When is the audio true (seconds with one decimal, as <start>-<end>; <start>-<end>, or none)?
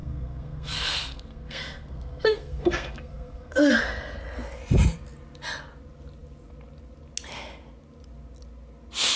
3.8-9.2